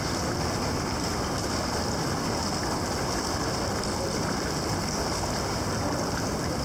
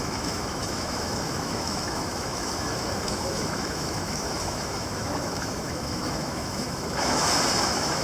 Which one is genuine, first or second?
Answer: first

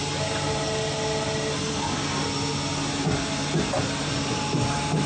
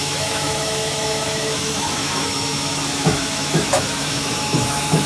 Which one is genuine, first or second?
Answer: first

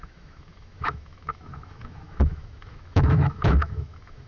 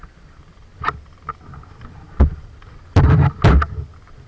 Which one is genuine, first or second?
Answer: second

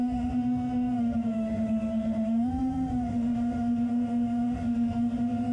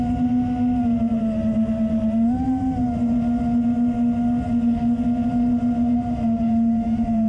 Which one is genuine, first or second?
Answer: second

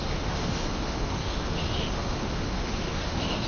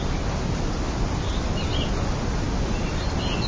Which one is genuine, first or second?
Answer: second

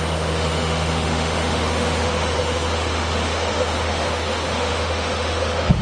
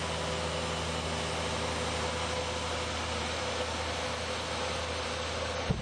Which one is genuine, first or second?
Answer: second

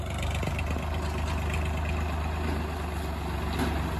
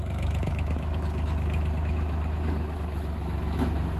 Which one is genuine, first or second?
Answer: first